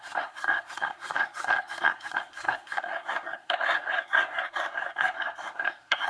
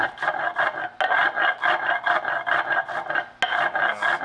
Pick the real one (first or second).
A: second